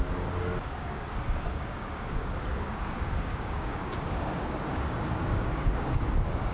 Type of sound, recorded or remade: remade